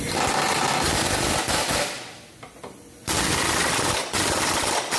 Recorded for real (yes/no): yes